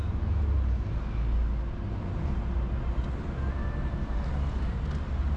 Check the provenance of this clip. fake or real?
real